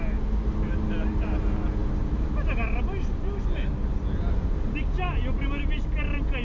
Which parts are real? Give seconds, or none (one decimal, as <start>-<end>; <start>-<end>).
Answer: 0.0-6.4